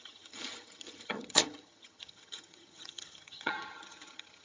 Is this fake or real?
fake